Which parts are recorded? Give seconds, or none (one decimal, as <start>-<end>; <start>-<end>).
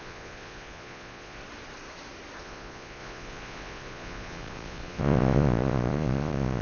1.4-2.4